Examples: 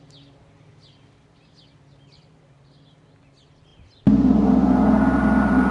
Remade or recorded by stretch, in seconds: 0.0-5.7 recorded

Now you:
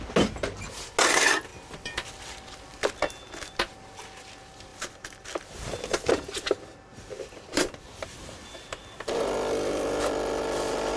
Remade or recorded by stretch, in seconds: 0.0-1.5 recorded; 1.5-2.8 remade; 2.8-4.7 recorded; 4.7-5.9 remade; 5.9-6.9 recorded; 6.9-11.0 remade

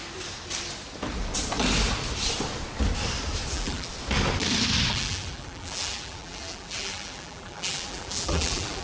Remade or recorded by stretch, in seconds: 0.0-3.5 recorded; 3.5-3.9 remade; 3.9-4.9 recorded; 4.9-8.8 remade

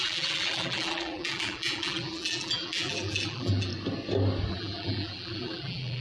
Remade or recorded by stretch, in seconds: 0.0-3.7 remade; 3.7-4.5 recorded; 4.5-6.0 remade

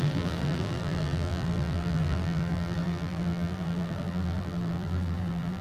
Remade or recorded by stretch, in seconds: 0.0-5.6 remade

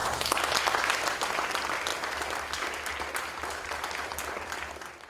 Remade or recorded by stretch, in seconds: 0.0-5.1 recorded